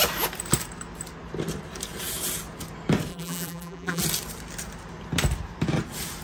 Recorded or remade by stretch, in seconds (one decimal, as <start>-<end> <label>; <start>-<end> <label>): 0.0-3.1 recorded; 3.1-4.0 remade; 4.0-6.2 recorded